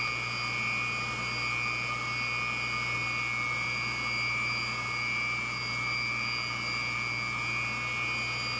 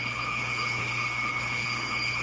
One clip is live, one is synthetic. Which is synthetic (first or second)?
second